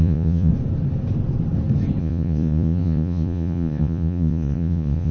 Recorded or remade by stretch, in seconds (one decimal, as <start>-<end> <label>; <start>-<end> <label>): 0.0-0.5 remade; 0.5-2.0 recorded; 2.0-5.1 remade